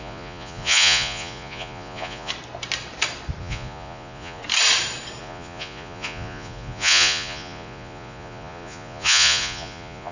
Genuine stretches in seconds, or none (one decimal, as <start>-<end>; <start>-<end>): 2.3-3.4; 4.4-5.2